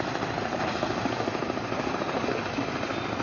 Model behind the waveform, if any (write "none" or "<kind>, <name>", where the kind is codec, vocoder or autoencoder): vocoder, BigVGAN v2